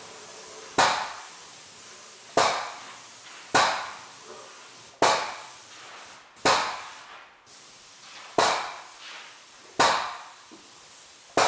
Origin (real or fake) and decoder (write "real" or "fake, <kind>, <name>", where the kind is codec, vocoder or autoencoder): real